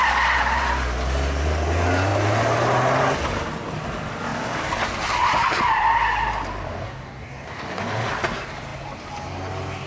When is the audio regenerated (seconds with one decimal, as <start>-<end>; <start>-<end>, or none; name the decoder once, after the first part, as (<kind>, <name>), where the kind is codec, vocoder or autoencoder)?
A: 6.7-7.8 (codec, DAC)